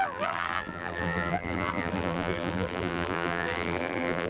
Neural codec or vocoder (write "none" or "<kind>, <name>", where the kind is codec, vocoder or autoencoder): vocoder, BigVGAN v2